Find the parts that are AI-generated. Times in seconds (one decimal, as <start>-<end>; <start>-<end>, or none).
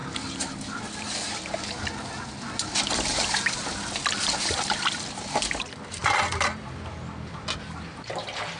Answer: none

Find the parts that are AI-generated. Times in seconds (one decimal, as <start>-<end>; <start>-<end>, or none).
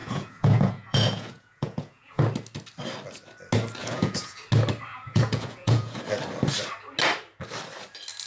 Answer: 0.0-2.2; 3.8-4.4; 4.9-6.0